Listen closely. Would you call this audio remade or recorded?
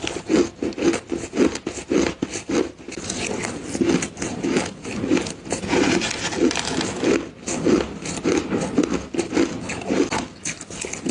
recorded